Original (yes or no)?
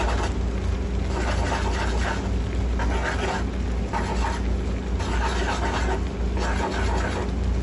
yes